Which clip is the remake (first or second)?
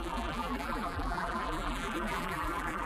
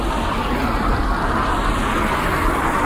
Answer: first